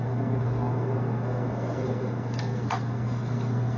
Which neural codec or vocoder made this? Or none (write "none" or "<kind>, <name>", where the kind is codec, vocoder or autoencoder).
codec, SNAC